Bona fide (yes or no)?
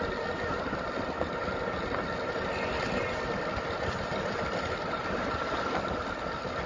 yes